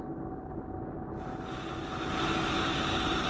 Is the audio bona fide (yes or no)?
yes